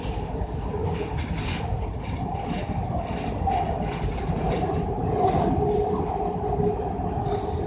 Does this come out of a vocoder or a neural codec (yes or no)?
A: no